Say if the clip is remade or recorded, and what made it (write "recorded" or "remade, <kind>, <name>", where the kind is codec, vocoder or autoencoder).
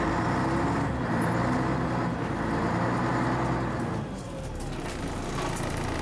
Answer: recorded